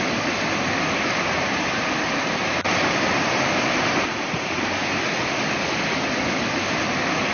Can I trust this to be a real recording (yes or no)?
no